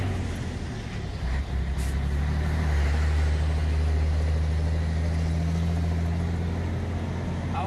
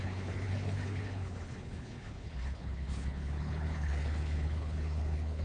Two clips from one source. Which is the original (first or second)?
first